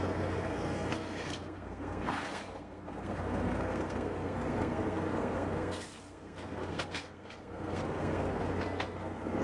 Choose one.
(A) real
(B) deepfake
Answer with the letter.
B